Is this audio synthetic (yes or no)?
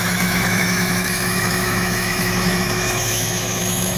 yes